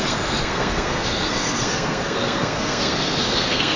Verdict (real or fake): fake